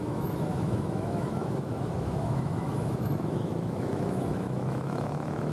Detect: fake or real fake